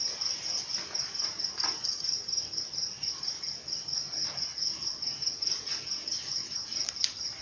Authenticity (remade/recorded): recorded